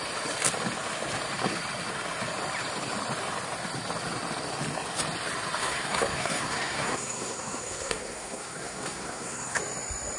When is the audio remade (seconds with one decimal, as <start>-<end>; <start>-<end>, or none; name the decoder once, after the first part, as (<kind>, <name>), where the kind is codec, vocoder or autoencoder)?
5.6-9.6 (codec, SNAC)